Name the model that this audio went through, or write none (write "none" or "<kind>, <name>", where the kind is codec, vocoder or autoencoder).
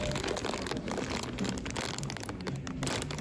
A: none